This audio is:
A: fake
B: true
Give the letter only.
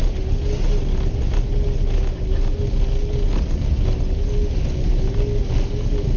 B